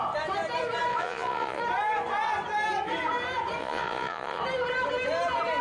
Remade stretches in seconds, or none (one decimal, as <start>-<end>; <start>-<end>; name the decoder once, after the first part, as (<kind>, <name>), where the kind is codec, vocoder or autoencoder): 0.9-1.6 (vocoder, Vocos); 3.6-4.4